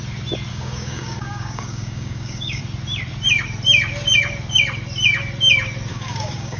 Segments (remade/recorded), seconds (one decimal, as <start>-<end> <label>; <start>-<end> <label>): 0.0-0.5 recorded; 0.5-2.6 remade; 2.6-5.9 recorded; 5.9-6.6 remade